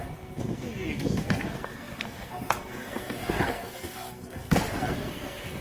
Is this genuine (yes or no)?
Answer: no